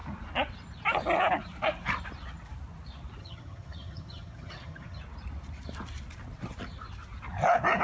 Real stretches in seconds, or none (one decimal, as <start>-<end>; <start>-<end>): 0.0-3.2; 5.0-7.8